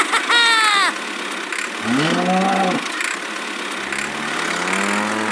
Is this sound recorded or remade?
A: recorded